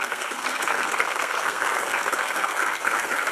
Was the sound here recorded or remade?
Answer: remade